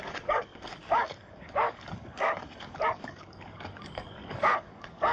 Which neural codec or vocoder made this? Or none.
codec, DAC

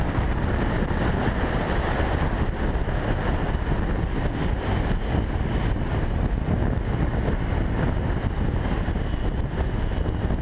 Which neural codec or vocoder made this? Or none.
none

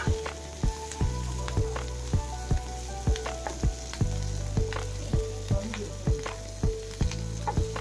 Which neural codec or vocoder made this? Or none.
none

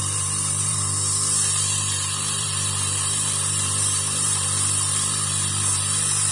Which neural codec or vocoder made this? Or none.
vocoder, BigVGAN v2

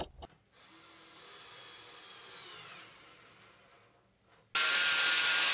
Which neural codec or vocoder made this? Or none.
none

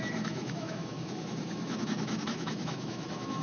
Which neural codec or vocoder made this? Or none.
autoencoder, DAC-VAE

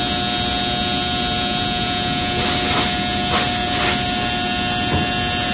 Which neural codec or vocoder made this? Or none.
none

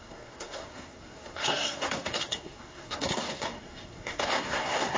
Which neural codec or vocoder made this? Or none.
codec, SNAC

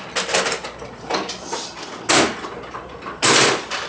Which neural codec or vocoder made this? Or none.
none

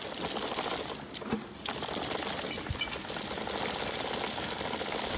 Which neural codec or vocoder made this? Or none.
none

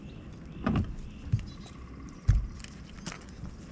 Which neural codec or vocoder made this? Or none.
none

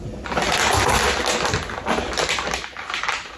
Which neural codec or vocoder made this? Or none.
none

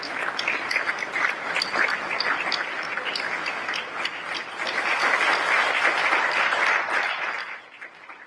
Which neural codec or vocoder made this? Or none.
none